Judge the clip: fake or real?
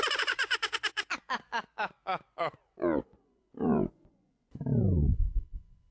fake